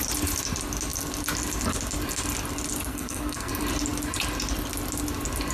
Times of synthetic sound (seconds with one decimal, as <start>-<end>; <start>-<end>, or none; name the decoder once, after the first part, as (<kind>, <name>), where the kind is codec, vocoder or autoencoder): 2.9-3.5 (codec, SNAC)